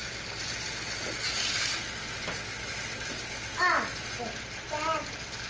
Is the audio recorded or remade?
recorded